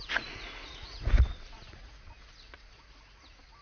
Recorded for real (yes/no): no